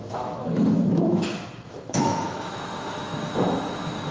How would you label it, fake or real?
fake